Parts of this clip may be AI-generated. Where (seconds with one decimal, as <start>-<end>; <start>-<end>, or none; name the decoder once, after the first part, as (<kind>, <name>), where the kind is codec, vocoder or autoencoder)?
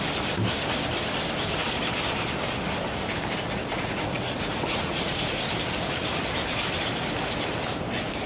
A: 3.7-5.4 (vocoder, Vocos)